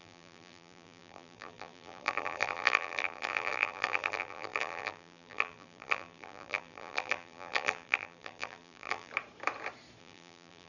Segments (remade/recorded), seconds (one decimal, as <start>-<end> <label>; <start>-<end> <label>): 0.0-9.1 remade; 9.1-10.0 recorded; 10.0-10.7 remade